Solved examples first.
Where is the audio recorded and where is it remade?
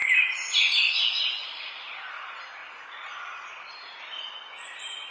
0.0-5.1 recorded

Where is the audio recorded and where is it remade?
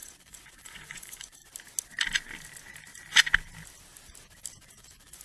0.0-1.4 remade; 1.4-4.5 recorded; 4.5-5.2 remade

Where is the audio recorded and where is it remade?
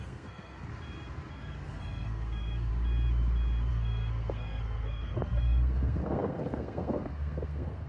0.0-0.7 remade; 0.7-1.3 recorded; 1.3-2.7 remade; 2.7-3.7 recorded; 3.7-7.9 remade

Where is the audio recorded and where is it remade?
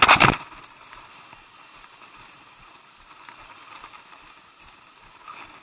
0.0-5.6 recorded